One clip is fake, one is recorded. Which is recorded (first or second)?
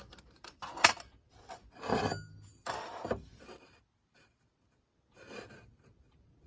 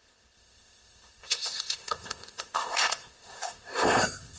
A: first